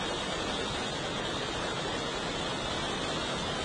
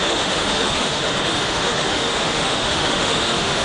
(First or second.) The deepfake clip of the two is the second